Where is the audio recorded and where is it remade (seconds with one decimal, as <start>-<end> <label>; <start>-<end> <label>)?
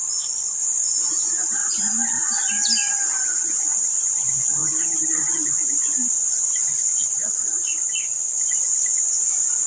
0.0-4.6 remade; 4.6-5.3 recorded; 5.3-9.7 remade